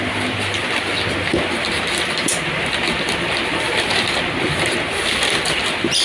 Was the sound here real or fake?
fake